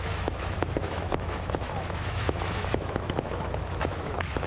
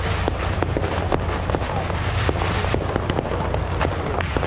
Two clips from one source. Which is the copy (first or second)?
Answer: first